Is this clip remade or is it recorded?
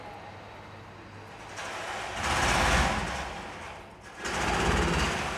recorded